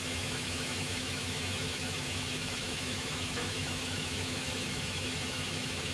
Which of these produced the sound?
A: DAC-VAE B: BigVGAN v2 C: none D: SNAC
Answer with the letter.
A